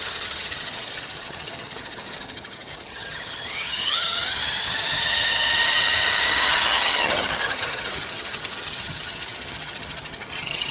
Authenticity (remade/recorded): remade